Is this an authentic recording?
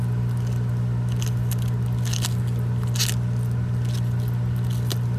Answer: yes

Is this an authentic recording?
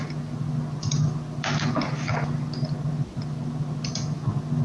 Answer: yes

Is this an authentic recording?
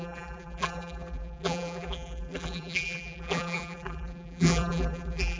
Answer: no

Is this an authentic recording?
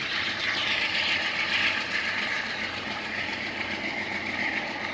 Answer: no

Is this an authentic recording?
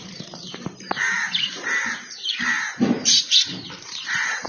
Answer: no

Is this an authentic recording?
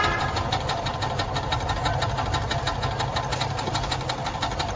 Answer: yes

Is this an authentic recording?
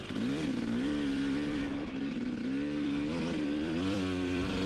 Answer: no